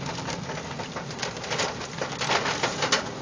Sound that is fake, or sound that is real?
real